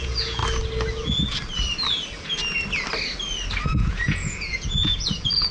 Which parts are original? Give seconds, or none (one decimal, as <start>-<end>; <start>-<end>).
0.4-3.7